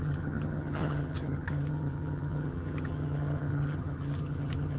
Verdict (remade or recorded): remade